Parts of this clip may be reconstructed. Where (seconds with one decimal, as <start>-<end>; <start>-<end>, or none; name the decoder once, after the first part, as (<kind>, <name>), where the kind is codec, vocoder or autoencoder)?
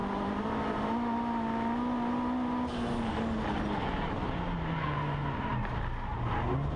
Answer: none